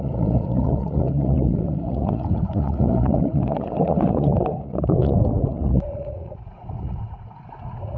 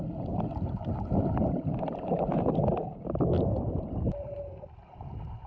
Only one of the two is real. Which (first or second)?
second